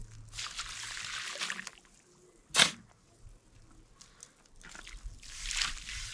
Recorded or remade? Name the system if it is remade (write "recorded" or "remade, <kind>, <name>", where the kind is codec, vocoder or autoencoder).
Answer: recorded